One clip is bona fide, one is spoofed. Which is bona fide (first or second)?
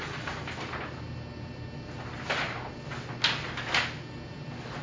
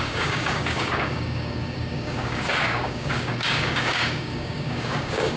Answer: first